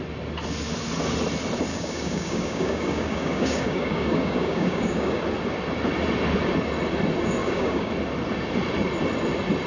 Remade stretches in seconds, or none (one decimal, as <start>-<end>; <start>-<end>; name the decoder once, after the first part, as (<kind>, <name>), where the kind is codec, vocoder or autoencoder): 1.7-5.2 (codec, DAC); 7.4-7.9